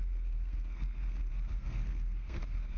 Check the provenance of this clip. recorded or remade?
remade